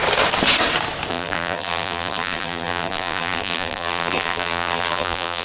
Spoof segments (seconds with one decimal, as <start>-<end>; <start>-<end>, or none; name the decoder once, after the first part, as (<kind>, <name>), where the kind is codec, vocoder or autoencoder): 1.1-5.4 (vocoder, BigVGAN v2)